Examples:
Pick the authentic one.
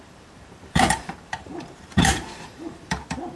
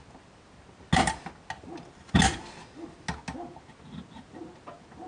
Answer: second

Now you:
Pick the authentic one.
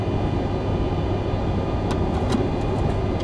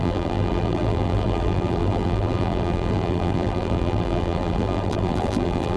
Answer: first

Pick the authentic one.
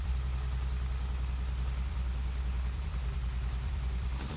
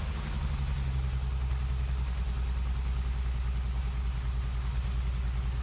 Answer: second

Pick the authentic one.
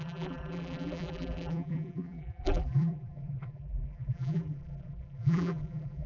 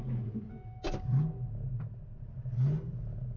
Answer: second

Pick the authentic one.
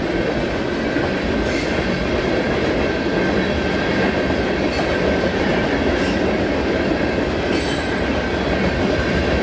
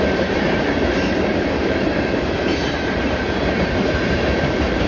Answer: first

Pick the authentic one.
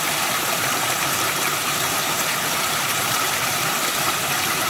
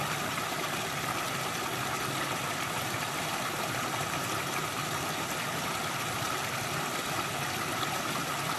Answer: second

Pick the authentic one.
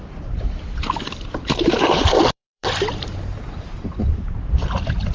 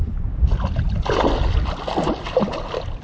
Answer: second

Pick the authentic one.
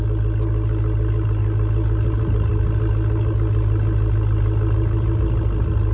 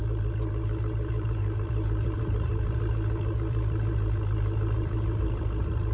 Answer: first